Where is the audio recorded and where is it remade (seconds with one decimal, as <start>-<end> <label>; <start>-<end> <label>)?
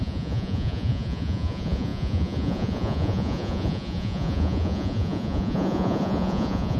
0.0-6.8 remade